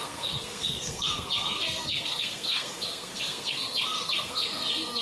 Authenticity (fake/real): fake